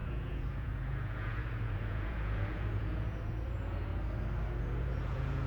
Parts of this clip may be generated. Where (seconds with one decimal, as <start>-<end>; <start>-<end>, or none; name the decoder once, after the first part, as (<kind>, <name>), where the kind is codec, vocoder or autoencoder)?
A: 0.0-3.9 (vocoder, Vocos); 4.6-5.5